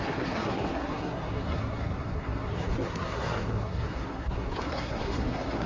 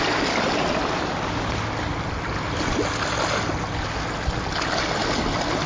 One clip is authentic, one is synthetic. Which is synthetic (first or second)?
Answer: first